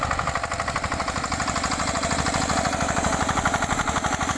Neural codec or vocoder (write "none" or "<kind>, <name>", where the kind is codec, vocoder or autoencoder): none